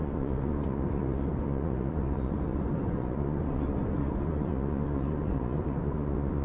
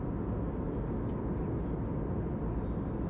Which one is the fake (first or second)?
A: first